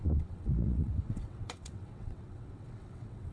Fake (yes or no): yes